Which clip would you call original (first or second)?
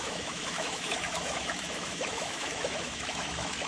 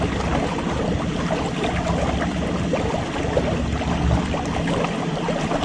second